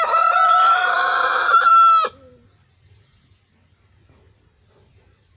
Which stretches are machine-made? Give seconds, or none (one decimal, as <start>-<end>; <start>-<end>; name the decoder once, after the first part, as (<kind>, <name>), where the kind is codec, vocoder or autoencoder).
0.0-1.7 (vocoder, BigVGAN v2); 4.9-5.4